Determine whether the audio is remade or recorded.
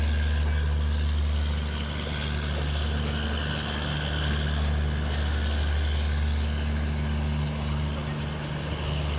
recorded